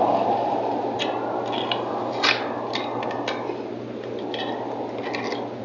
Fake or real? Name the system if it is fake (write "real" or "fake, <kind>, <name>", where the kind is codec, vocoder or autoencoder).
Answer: real